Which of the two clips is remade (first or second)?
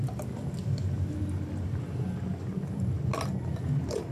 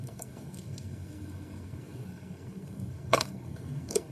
second